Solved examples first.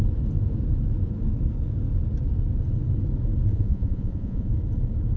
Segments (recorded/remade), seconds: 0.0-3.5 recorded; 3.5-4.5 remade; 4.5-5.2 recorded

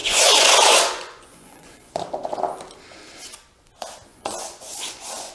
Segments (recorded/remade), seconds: 0.0-2.1 remade; 2.1-4.1 recorded; 4.1-5.3 remade

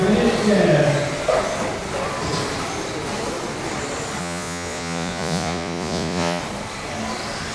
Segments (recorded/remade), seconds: 0.0-4.2 recorded; 4.2-6.4 remade; 6.4-7.5 recorded

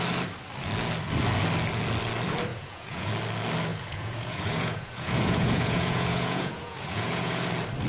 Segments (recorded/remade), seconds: 0.0-2.5 recorded; 2.5-3.1 remade; 3.1-3.7 recorded; 3.7-7.5 remade; 7.5-7.9 recorded

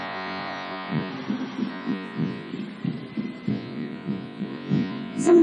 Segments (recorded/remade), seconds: 0.0-1.1 remade; 1.1-1.7 recorded; 1.7-2.5 remade; 2.5-3.5 recorded; 3.5-5.4 remade

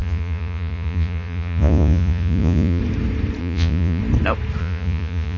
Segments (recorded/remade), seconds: 0.0-2.8 remade; 2.8-3.4 recorded; 3.4-4.0 remade; 4.0-4.6 recorded; 4.6-5.4 remade